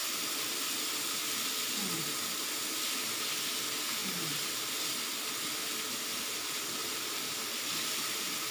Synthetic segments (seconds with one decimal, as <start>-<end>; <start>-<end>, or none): 0.0-3.2; 6.8-8.5